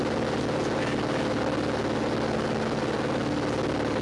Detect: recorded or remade recorded